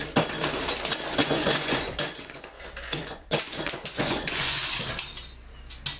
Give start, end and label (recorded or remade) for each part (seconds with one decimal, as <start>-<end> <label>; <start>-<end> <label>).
0.0-1.2 recorded; 1.2-4.8 remade; 4.8-6.0 recorded